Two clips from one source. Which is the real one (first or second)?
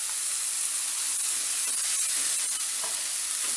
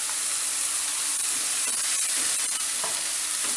first